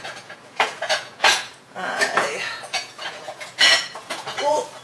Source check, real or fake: fake